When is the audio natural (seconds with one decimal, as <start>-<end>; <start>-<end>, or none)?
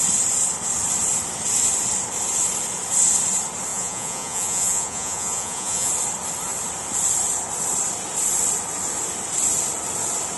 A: 0.0-3.7; 5.9-10.4